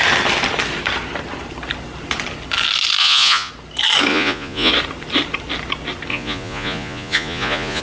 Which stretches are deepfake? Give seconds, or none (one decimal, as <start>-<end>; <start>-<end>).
3.0-3.5; 4.1-4.7; 6.1-7.8